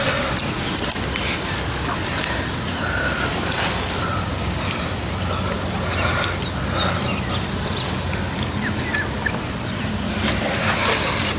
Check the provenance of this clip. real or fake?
real